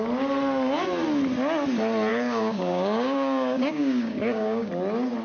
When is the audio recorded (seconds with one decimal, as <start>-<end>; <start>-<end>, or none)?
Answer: 0.0-2.1; 4.7-5.2